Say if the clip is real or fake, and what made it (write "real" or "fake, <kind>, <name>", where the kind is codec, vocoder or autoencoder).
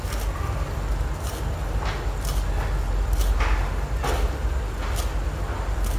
real